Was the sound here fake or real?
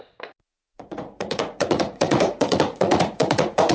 fake